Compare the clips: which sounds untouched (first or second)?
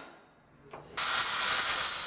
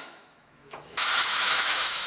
first